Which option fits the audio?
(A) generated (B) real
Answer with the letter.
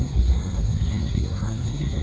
A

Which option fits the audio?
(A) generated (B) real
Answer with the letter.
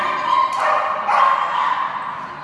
B